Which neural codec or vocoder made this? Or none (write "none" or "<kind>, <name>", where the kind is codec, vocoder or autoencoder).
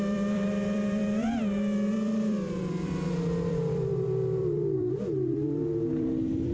vocoder, BigVGAN v2